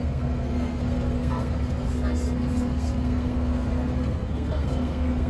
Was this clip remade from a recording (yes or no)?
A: yes